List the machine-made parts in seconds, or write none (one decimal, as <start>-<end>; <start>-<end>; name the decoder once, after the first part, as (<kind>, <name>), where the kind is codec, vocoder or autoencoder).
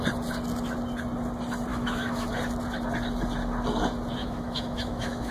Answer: 1.7-2.3 (autoencoder, DAC-VAE); 4.2-5.3